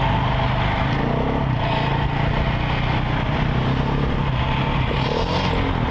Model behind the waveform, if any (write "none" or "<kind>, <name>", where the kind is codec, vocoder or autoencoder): none